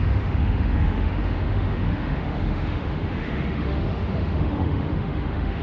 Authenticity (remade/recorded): remade